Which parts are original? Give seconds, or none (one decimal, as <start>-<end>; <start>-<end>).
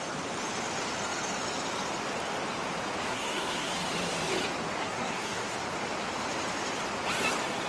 0.0-3.1; 3.7-4.8; 5.5-7.7